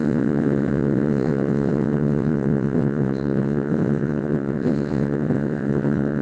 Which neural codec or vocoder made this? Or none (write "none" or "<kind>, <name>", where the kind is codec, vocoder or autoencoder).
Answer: vocoder, WaveNeXt